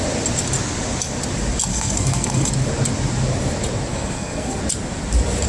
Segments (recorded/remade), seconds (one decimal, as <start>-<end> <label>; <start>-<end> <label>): 0.0-1.7 recorded; 1.7-2.5 remade; 2.5-3.9 recorded; 3.9-4.6 remade; 4.6-5.5 recorded